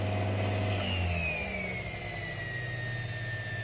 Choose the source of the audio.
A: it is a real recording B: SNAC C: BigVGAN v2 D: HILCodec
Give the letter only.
A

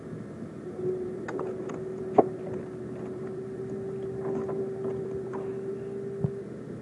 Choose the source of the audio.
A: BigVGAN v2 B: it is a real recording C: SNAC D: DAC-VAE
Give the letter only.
B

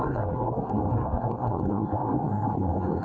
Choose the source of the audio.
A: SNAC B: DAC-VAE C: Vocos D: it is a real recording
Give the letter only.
A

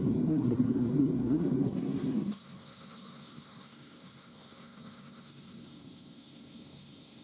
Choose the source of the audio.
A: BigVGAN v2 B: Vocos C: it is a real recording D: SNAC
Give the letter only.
D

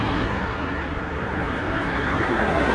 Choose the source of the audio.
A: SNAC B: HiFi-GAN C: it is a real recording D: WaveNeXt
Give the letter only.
A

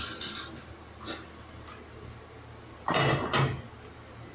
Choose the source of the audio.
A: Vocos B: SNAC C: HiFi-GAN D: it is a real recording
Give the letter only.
D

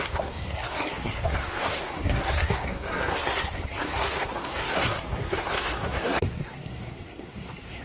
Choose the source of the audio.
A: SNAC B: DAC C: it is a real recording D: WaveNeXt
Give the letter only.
A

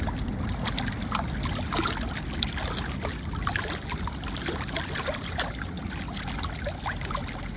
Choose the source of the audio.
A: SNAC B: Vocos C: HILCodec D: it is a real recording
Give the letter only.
D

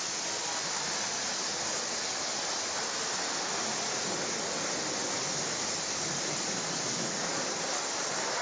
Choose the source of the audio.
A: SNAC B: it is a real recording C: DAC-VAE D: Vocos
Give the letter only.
B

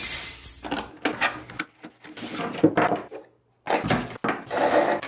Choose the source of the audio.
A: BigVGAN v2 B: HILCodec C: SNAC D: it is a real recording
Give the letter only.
D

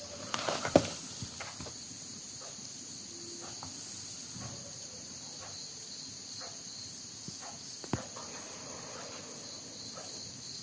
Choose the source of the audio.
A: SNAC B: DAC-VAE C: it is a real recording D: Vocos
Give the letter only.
C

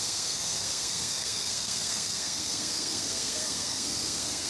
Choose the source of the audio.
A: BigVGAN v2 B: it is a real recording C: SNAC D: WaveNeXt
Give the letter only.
C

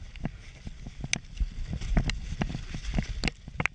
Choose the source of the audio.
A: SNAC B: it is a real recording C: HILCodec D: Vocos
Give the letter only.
B